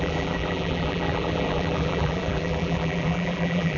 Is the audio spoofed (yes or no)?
yes